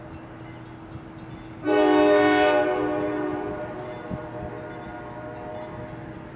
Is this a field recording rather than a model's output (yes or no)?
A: yes